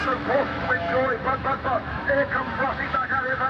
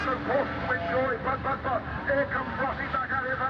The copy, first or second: first